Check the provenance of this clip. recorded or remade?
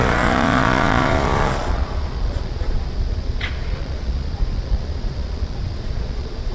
remade